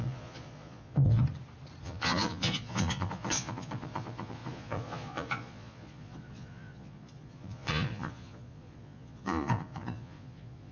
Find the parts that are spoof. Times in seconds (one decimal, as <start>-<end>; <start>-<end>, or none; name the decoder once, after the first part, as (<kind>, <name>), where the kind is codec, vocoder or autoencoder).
0.0-1.2 (vocoder, Vocos); 1.8-10.7